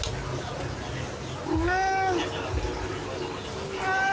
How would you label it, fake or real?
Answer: real